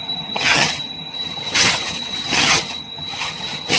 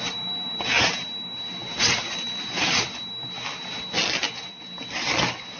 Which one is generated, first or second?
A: first